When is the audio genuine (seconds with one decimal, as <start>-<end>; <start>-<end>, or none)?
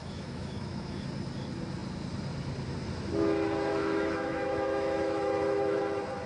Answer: 1.0-3.7; 5.8-6.3